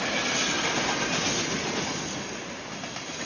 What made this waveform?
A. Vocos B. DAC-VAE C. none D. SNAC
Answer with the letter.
C